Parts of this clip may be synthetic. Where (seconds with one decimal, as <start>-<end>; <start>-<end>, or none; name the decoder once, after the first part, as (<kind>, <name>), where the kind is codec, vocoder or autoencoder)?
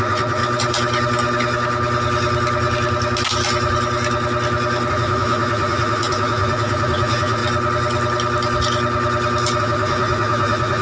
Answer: 0.0-0.4 (vocoder, Vocos); 4.9-7.4; 9.6-10.8